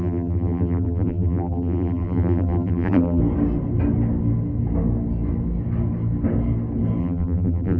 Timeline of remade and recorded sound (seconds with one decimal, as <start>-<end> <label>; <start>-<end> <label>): 0.0-3.2 remade; 3.2-7.0 recorded; 7.0-7.8 remade